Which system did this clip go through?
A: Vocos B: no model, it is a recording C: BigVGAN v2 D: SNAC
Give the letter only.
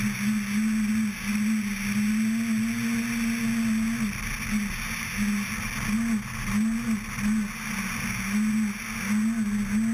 B